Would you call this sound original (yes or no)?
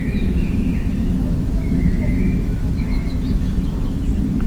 no